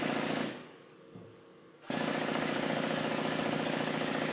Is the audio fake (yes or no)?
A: yes